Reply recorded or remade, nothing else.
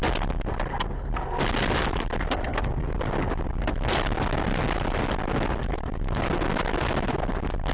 recorded